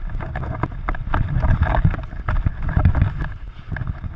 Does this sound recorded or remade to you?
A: recorded